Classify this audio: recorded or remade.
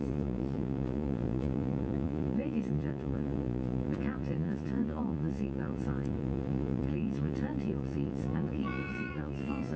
remade